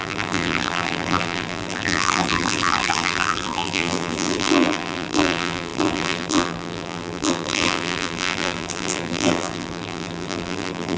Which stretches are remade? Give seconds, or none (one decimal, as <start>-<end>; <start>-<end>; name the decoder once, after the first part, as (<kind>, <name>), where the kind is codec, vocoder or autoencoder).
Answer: 0.0-11.0 (vocoder, BigVGAN v2)